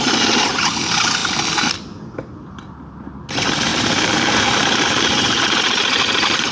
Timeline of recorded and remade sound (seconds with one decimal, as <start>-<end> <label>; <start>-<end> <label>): 0.0-3.7 recorded; 3.7-6.1 remade; 6.1-6.5 recorded